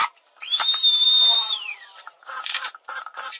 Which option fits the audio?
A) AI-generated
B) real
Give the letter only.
A